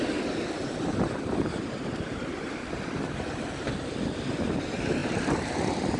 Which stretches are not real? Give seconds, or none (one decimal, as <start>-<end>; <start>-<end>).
none